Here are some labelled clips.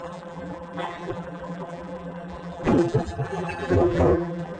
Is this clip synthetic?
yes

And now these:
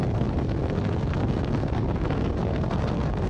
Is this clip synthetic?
yes